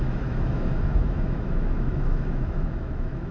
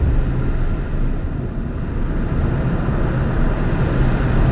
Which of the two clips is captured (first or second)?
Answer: second